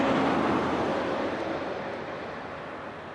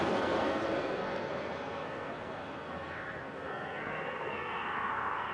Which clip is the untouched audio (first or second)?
first